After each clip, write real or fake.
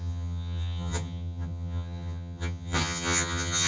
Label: fake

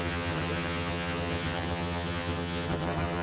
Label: fake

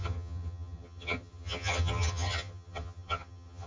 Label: fake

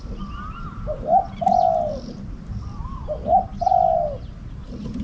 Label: real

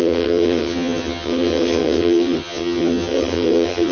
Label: fake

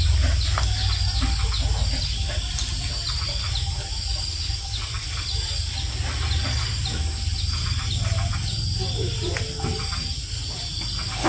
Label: real